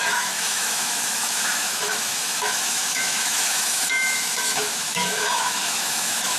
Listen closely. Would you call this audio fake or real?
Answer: fake